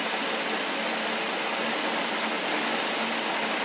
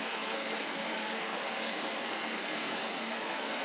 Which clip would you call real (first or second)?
first